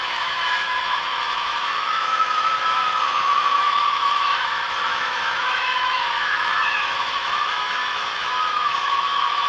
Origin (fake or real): fake